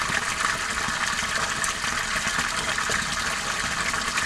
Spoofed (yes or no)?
no